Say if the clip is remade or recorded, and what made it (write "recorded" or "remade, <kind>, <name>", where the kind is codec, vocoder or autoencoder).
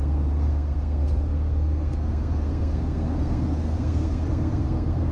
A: remade, codec, SNAC